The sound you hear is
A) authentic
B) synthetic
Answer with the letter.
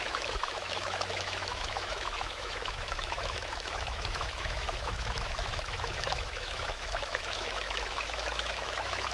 B